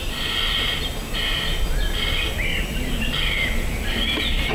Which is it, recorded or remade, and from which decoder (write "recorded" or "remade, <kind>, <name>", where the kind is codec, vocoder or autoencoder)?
recorded